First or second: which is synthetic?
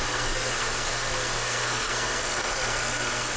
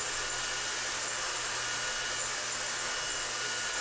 first